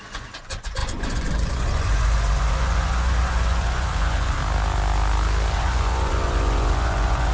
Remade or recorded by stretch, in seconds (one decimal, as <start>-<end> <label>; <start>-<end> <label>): 0.0-4.4 remade; 4.4-5.5 recorded; 5.5-7.3 remade

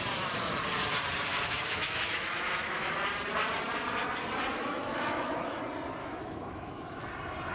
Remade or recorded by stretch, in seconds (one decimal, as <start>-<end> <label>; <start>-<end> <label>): 0.0-1.3 recorded; 1.3-2.9 remade; 2.9-4.5 recorded; 4.5-5.6 remade; 5.6-6.0 recorded; 6.0-7.0 remade; 7.0-7.5 recorded

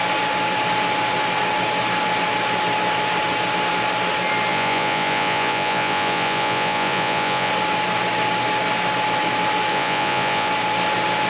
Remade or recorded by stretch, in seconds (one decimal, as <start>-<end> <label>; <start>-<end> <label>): 0.0-4.5 recorded; 4.5-7.5 remade; 7.5-9.7 recorded; 9.7-10.5 remade; 10.5-11.3 recorded

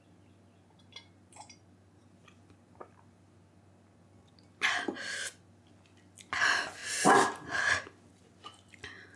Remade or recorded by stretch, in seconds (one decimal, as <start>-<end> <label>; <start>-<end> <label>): 0.0-9.2 recorded

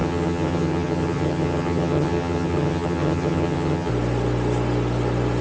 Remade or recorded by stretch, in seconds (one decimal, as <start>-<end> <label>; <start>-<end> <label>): 0.0-3.9 remade; 3.9-5.4 recorded